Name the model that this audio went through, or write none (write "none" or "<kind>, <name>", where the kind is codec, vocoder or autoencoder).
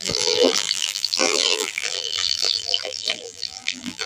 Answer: vocoder, BigVGAN v2